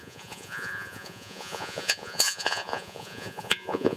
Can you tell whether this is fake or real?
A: fake